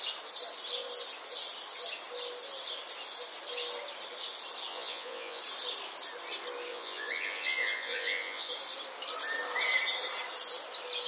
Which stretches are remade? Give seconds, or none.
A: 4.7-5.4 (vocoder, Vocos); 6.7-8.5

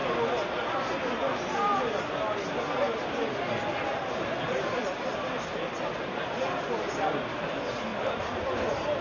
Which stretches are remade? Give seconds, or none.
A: 4.1-9.0 (vocoder, BigVGAN v2)

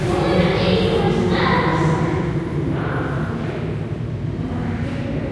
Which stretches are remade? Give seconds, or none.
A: none

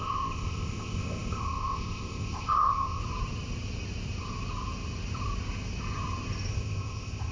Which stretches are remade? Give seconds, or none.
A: 0.0-3.0 (codec, ZipCodec); 6.5-7.3